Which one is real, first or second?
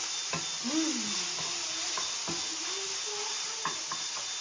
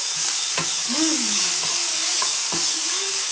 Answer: first